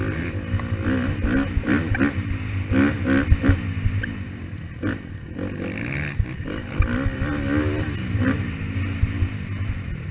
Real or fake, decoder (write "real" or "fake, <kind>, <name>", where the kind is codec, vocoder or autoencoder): real